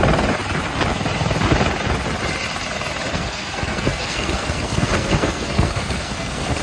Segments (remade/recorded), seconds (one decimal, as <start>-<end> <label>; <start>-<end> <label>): 0.0-3.1 recorded; 3.1-6.6 remade